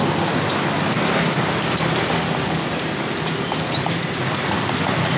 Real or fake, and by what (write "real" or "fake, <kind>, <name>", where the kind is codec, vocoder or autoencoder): real